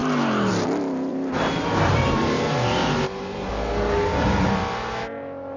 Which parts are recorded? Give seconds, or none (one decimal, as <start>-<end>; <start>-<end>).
0.5-1.1; 3.5-5.6